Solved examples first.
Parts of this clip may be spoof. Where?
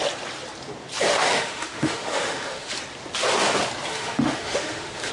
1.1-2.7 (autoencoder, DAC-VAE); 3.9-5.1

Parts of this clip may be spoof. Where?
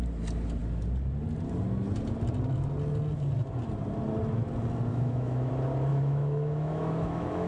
4.9-5.5 (autoencoder, DAC-VAE); 5.9-7.5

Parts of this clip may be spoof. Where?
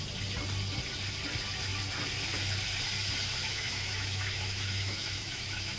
3.4-5.8 (autoencoder, DAC-VAE)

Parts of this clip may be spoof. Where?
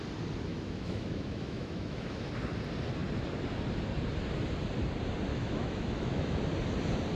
0.5-2.3 (autoencoder, DAC-VAE); 5.3-6.4